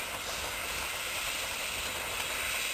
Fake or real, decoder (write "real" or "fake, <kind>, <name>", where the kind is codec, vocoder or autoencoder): real